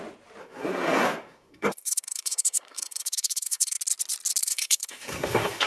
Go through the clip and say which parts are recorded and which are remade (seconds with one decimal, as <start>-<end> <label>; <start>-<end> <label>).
0.0-0.4 recorded; 0.4-3.8 remade; 3.8-4.4 recorded; 4.4-5.7 remade